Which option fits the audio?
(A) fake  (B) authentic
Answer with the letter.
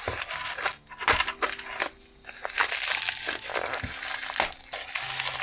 B